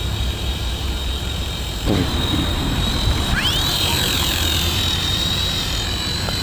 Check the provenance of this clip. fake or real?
fake